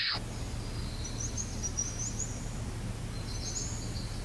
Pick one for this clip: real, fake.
real